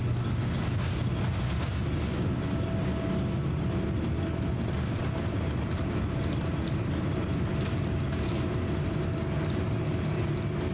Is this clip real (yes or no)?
yes